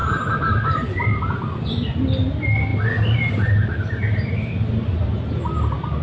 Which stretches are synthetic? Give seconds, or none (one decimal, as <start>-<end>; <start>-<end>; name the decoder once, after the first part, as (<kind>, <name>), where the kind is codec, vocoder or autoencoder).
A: 0.0-1.7 (vocoder, BigVGAN v2); 2.7-5.6